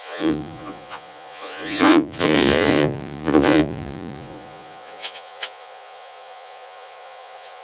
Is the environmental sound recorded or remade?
remade